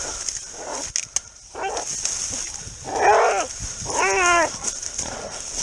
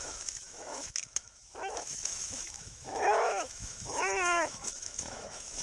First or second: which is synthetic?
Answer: second